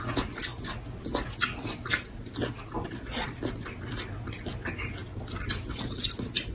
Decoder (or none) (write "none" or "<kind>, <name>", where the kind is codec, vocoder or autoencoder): none